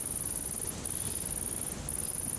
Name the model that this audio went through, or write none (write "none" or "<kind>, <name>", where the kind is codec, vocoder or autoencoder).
none